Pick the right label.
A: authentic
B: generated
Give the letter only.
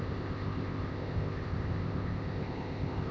B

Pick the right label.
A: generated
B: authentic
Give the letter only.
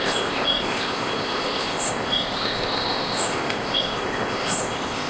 A